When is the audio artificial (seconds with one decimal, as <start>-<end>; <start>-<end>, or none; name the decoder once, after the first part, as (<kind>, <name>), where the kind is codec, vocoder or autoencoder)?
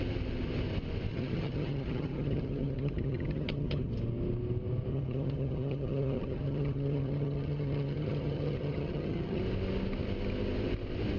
1.1-3.9 (vocoder, HiFi-GAN); 4.9-9.4